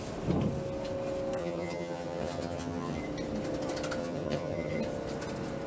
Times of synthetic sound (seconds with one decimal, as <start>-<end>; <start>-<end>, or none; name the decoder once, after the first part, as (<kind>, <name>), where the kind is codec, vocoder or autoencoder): 1.4-3.0 (vocoder, HiFi-GAN); 4.0-4.8